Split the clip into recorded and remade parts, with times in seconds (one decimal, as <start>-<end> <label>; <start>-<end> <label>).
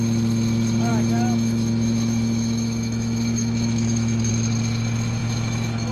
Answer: 0.0-0.9 recorded; 0.9-4.3 remade; 4.3-5.2 recorded; 5.2-5.9 remade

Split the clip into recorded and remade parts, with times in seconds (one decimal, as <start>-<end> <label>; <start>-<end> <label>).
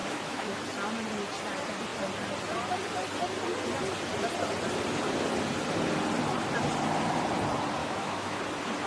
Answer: 0.0-0.6 remade; 0.6-7.8 recorded; 7.8-8.4 remade; 8.4-8.9 recorded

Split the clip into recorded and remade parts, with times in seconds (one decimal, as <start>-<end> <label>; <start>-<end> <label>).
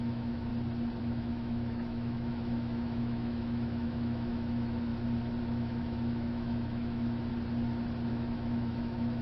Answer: 0.0-0.5 remade; 0.5-1.0 recorded; 1.0-4.9 remade; 4.9-5.4 recorded; 5.4-7.3 remade; 7.3-8.1 recorded; 8.1-9.2 remade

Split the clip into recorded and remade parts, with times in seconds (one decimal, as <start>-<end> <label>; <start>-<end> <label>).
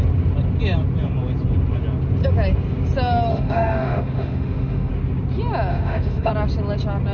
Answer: 0.0-3.3 recorded; 3.3-4.9 remade; 4.9-5.7 recorded; 5.7-6.3 remade; 6.3-7.1 recorded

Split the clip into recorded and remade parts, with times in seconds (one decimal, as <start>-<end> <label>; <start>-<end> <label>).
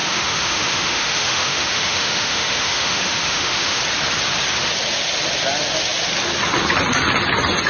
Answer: 0.0-3.8 remade; 3.8-7.7 recorded